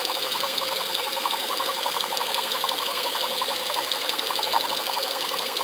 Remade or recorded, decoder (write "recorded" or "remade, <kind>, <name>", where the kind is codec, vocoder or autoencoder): remade, codec, SNAC